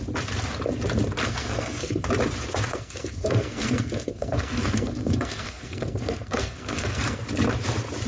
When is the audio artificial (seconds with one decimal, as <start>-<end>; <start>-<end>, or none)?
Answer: 1.2-2.1; 2.7-7.2